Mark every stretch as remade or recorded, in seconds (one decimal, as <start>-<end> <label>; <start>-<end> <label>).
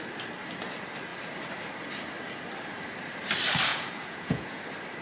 0.0-3.7 recorded; 3.7-4.6 remade; 4.6-5.0 recorded